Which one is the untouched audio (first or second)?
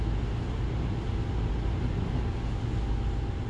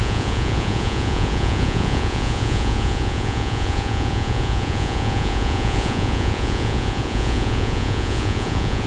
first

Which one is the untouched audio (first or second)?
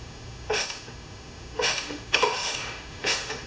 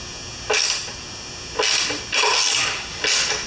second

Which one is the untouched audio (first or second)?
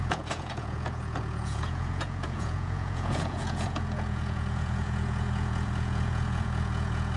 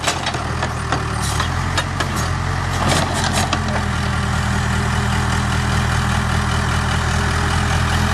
second